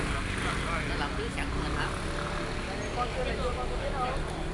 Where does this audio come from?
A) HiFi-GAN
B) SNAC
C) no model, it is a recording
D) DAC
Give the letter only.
C